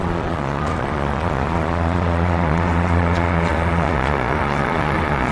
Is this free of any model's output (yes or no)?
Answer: no